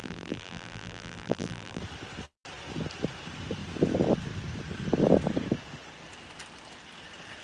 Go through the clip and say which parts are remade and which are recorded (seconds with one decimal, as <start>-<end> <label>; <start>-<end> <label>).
0.0-1.8 remade; 1.8-7.4 recorded